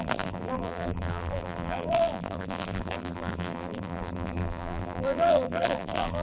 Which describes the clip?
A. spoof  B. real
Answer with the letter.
A